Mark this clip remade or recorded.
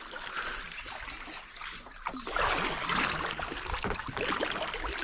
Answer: recorded